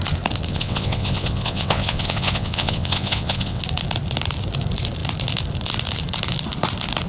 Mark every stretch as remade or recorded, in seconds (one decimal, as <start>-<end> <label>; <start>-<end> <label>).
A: 0.0-0.5 recorded; 0.5-3.6 remade; 3.6-7.1 recorded